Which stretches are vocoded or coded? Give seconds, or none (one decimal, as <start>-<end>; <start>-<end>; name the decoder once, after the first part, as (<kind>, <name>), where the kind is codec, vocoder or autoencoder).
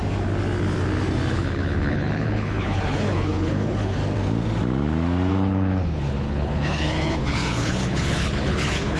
1.3-4.0 (codec, HILCodec); 5.3-9.0